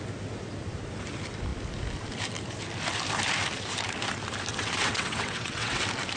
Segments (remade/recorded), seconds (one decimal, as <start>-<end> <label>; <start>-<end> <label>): 0.0-4.5 recorded; 4.5-5.8 remade; 5.8-6.2 recorded